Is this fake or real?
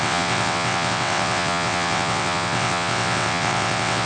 fake